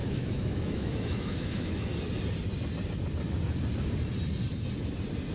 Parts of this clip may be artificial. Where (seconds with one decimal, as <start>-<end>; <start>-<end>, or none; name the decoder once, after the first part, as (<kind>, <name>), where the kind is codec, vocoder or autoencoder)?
0.0-1.9 (autoencoder, DAC-VAE)